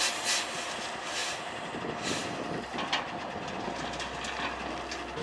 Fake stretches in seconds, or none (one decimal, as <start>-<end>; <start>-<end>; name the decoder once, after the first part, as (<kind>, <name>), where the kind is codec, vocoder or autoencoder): 1.2-1.8 (vocoder, BigVGAN v2)